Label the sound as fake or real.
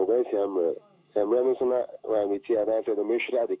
fake